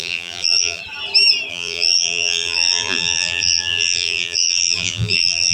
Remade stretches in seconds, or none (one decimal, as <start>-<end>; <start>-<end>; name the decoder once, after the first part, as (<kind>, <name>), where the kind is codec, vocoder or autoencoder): 0.0-0.8 (vocoder, BigVGAN v2); 1.5-5.5